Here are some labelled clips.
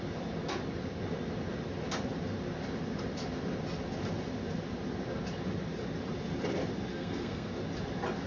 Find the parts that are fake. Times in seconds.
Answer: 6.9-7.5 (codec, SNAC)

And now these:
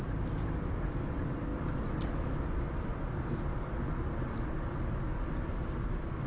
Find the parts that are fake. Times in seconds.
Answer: 0.0-2.9 (vocoder, BigVGAN v2); 5.3-6.3

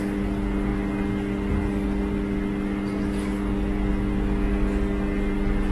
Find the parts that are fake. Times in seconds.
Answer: none

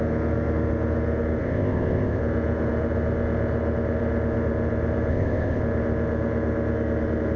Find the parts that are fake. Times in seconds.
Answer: 1.4-2.2 (codec, ZipCodec); 5.1-5.6

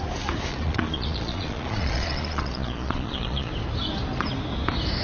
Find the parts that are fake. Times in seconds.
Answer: 0.5-3.5 (vocoder, Vocos)

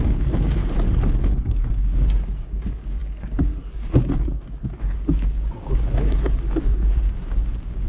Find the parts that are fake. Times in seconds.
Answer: 0.0-0.6 (codec, DAC); 1.4-7.9

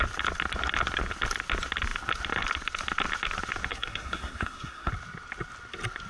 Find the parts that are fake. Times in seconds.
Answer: 3.7-4.9 (codec, SNAC)

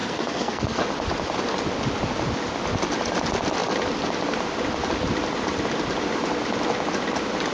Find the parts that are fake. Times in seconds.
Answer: 0.0-0.8 (codec, SNAC)